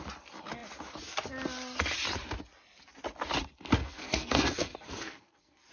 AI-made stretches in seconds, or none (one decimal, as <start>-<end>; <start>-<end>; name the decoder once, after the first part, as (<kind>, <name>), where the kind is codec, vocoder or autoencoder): 3.8-5.7 (codec, SNAC)